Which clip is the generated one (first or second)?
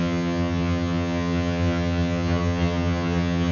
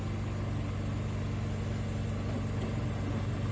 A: first